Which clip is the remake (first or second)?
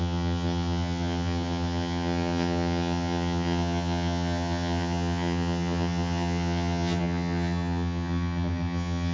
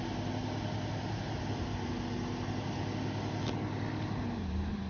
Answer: first